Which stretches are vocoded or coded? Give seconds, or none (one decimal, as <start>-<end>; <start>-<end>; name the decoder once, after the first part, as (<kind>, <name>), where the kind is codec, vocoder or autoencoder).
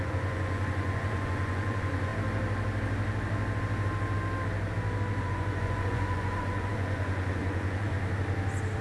0.0-2.1 (vocoder, Vocos); 5.2-7.9